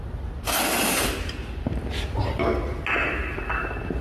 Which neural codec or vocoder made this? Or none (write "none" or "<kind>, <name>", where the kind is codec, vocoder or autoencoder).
none